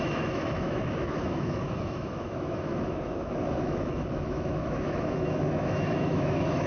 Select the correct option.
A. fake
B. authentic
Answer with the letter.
A